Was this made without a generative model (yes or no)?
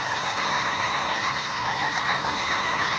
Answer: no